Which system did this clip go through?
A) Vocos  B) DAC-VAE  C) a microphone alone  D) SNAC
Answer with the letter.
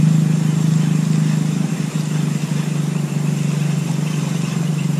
C